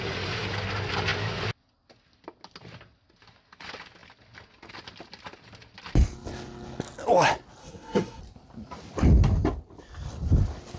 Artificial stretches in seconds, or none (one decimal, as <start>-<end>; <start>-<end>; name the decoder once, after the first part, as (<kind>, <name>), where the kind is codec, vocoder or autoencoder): 7.6-8.2 (codec, SNAC)